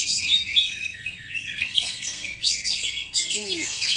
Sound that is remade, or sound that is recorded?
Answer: remade